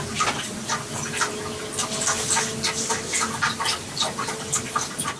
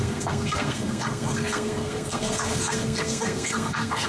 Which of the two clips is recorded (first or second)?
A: first